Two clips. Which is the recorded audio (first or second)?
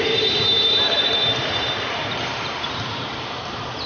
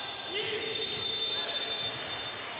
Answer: second